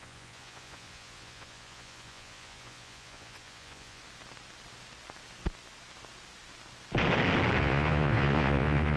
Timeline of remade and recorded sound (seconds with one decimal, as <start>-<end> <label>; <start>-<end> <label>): 0.0-4.0 remade; 4.0-7.6 recorded; 7.6-9.0 remade